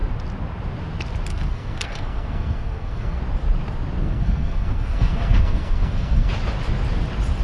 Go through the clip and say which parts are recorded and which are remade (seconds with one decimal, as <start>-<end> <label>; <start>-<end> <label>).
0.0-1.3 recorded; 1.3-3.2 remade; 3.2-4.0 recorded; 4.0-6.3 remade; 6.3-7.4 recorded